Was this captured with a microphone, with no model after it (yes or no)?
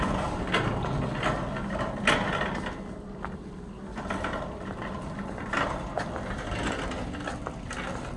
yes